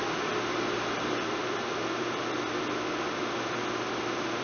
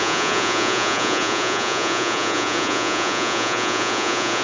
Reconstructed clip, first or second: second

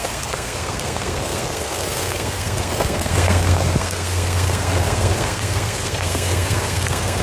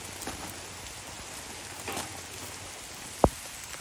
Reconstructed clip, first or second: first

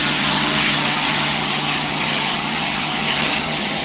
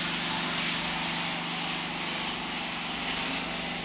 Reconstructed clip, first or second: first